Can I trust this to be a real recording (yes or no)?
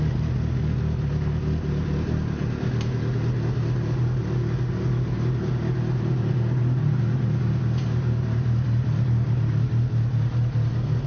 yes